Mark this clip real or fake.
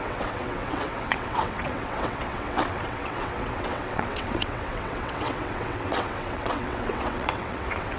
fake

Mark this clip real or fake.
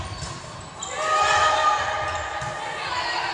real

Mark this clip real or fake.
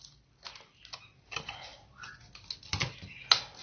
real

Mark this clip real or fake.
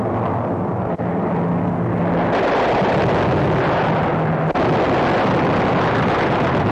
real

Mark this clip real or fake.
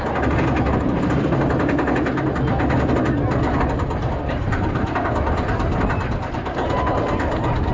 real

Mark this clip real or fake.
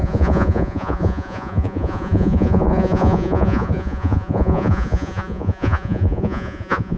fake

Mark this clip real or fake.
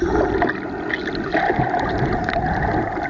real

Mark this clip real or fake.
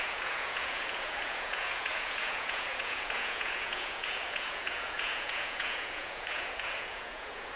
fake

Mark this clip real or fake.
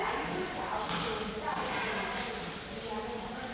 real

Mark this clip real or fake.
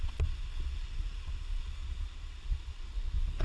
fake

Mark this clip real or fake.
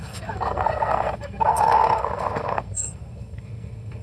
fake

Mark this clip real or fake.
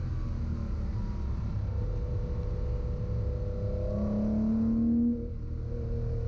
real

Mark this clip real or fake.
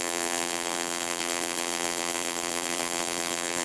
fake